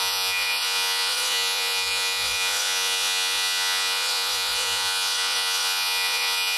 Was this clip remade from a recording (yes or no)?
yes